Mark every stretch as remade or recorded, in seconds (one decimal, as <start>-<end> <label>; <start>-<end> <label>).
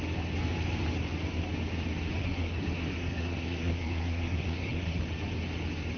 0.0-2.2 recorded; 2.2-5.0 remade; 5.0-6.0 recorded